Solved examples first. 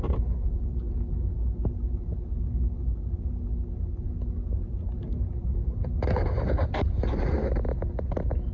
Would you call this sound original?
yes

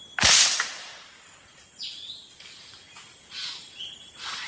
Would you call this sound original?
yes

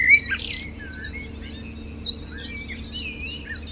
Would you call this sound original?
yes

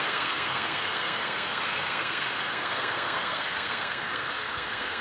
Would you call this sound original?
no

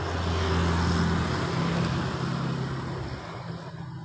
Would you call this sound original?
yes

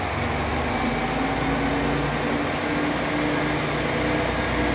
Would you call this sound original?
yes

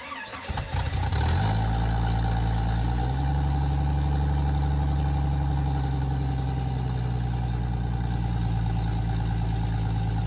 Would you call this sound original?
yes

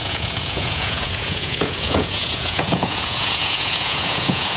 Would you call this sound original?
no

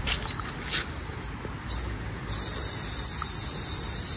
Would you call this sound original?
yes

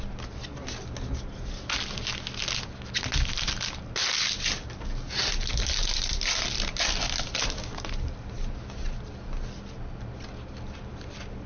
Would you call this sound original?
yes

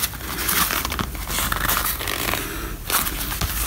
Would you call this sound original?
yes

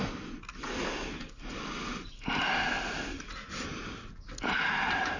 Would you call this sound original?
yes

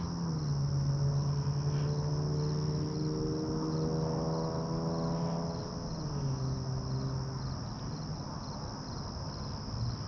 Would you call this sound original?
yes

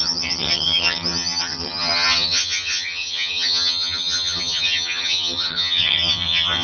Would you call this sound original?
no